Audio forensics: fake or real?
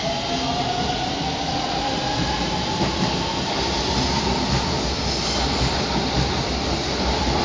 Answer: real